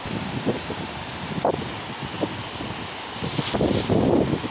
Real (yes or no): yes